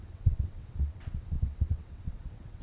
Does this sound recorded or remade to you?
remade